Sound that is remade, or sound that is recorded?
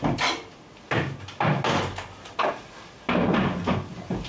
recorded